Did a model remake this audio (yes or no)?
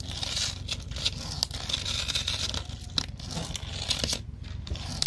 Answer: no